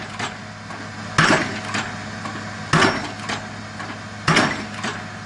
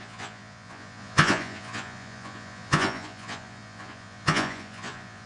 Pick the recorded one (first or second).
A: first